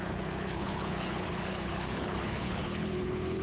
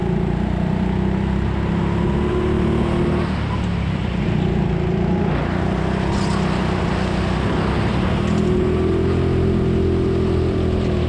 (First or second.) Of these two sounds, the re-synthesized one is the first